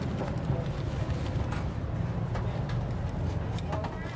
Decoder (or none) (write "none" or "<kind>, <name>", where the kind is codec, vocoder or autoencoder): none